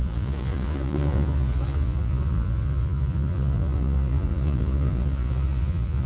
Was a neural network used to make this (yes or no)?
yes